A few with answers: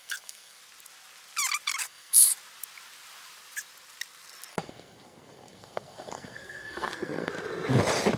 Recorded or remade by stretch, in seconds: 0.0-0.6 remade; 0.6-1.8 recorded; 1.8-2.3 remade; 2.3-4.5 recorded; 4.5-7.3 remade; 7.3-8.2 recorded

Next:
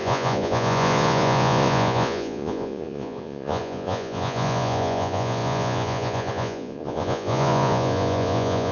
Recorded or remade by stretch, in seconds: 0.0-8.7 remade